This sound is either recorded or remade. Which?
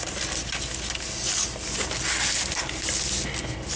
recorded